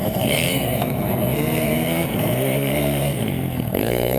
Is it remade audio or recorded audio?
remade